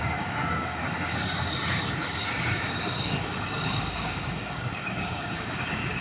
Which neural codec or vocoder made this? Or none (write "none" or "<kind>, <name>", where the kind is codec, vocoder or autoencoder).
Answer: codec, DAC